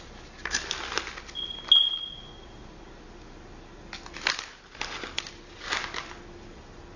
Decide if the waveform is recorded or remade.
recorded